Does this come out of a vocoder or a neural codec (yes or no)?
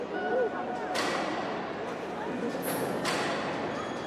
no